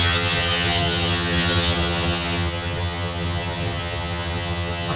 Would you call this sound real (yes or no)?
no